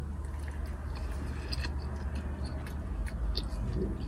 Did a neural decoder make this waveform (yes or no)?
no